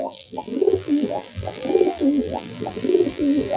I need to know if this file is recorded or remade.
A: remade